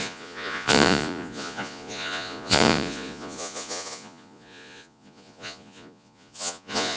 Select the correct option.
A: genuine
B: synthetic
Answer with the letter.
B